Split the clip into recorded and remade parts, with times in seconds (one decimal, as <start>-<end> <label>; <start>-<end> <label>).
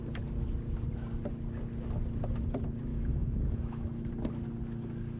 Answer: 0.0-2.9 recorded; 2.9-4.1 remade; 4.1-5.2 recorded